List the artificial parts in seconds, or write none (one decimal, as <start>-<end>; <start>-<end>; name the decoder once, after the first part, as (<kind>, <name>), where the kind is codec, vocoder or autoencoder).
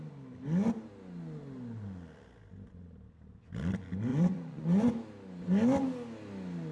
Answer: 4.1-4.9 (vocoder, Vocos)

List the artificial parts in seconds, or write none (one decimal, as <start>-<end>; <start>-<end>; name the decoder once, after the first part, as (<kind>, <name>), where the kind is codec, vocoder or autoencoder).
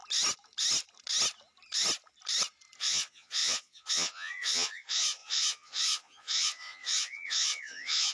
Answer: 2.8-8.1 (vocoder, Vocos)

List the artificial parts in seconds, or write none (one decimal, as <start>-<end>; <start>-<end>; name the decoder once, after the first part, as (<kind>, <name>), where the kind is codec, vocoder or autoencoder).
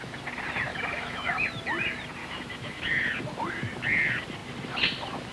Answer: 0.7-1.3 (autoencoder, DAC-VAE); 2.2-3.1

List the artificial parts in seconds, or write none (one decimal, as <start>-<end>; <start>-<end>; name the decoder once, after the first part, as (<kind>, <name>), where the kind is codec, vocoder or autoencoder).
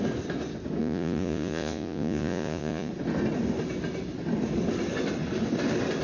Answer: 0.8-2.9 (vocoder, Vocos)